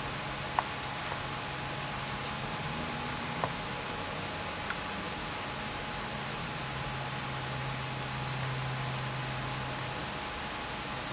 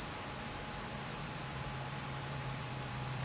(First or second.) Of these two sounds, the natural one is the first